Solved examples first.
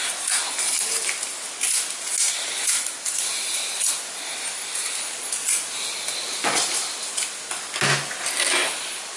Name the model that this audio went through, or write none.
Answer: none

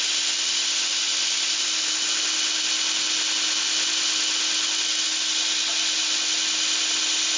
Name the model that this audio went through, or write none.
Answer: none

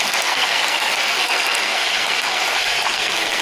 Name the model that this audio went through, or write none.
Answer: codec, SNAC